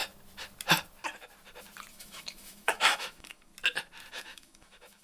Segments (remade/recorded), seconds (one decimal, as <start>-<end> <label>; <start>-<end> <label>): 0.0-1.9 recorded; 1.9-3.5 remade; 3.5-4.1 recorded; 4.1-5.0 remade